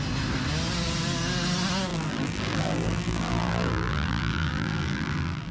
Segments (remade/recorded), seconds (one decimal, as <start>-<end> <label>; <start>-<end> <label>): 0.0-1.9 recorded; 1.9-5.5 remade